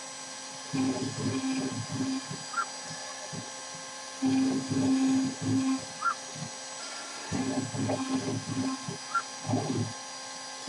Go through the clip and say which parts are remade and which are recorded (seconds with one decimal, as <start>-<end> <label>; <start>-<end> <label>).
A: 0.0-6.8 recorded; 6.8-7.4 remade; 7.4-10.7 recorded

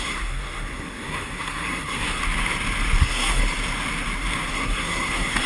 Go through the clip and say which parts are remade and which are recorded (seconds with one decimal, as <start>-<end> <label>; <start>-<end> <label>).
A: 0.0-2.2 remade; 2.2-3.0 recorded; 3.0-3.4 remade; 3.4-4.5 recorded; 4.5-5.5 remade

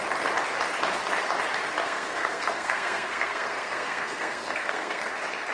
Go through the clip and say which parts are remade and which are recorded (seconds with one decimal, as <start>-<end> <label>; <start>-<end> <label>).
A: 0.0-1.8 recorded; 1.8-5.1 remade; 5.1-5.5 recorded

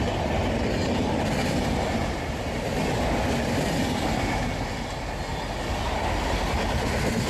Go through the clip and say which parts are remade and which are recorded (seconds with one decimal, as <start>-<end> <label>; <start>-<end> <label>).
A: 0.0-7.3 recorded